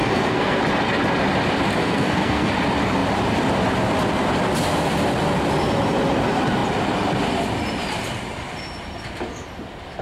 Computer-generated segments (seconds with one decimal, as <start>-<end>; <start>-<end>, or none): 0.0-0.6; 1.8-2.5